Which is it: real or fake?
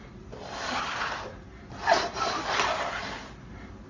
real